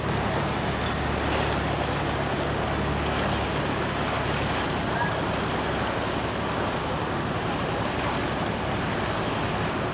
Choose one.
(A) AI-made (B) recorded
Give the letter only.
B